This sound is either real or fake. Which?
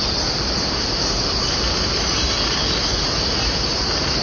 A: real